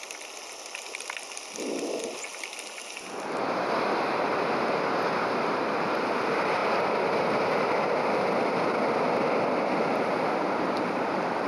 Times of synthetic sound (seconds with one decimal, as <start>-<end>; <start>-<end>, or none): none

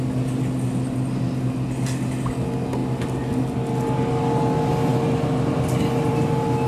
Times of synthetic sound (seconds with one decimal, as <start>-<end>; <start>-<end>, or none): none

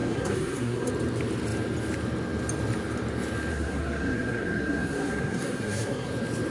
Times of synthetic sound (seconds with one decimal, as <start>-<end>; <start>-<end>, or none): 0.0-0.9; 3.5-6.1